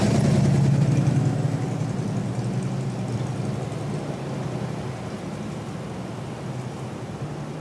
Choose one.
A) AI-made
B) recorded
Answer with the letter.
B